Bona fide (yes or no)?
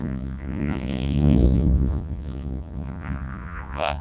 no